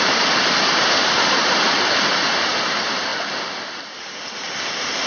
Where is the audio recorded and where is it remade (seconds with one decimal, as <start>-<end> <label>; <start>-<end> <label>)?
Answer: 0.0-1.4 remade; 1.4-2.0 recorded; 2.0-3.1 remade; 3.1-3.7 recorded; 3.7-5.1 remade